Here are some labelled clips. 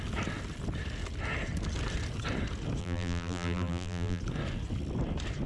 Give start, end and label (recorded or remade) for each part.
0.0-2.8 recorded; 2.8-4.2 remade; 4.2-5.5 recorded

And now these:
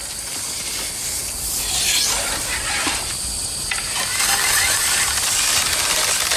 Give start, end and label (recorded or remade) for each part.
0.0-6.4 recorded

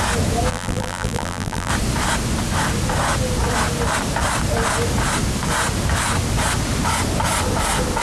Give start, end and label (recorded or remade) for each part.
0.0-0.5 recorded; 0.5-1.7 remade; 1.7-8.0 recorded

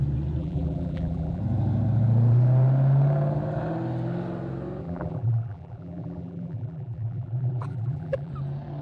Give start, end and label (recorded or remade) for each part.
0.0-0.4 recorded; 0.4-1.4 remade; 1.4-4.8 recorded; 4.8-8.3 remade; 8.3-8.8 recorded

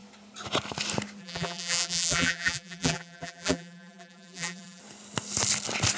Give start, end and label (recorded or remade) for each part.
0.0-1.2 recorded; 1.2-4.8 remade; 4.8-6.0 recorded

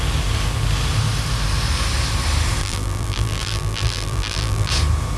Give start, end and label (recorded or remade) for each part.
0.0-2.6 recorded; 2.6-4.7 remade; 4.7-5.2 recorded

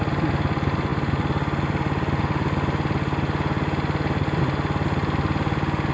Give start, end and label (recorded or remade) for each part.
0.0-5.9 recorded